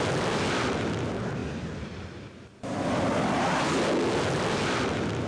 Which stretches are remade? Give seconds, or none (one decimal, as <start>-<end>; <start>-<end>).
none